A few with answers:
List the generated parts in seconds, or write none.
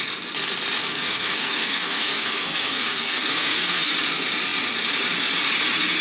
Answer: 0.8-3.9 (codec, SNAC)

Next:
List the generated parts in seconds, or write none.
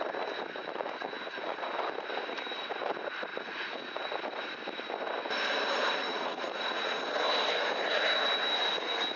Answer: 0.6-1.7 (vocoder, Vocos); 3.3-4.1; 6.1-7.0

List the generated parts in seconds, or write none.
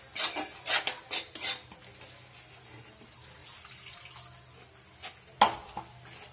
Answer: none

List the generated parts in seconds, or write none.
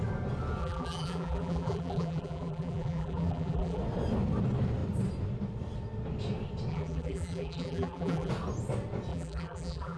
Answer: 0.6-3.8 (vocoder, BigVGAN v2); 6.7-8.3; 9.1-10.0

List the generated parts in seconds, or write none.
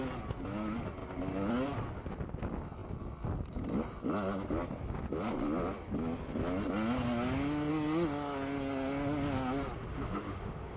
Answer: 9.9-10.8 (autoencoder, DAC-VAE)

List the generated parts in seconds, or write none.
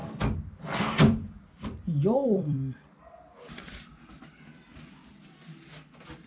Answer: 0.0-3.8 (vocoder, BigVGAN v2)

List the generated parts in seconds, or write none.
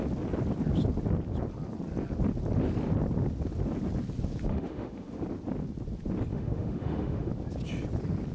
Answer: 4.5-5.2 (autoencoder, DAC-VAE); 6.3-7.3